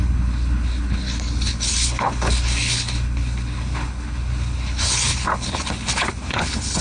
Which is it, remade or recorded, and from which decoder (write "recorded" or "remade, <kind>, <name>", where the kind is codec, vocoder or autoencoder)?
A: remade, codec, HILCodec